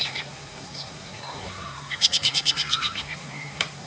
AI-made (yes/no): yes